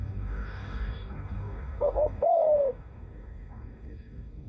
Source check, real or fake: fake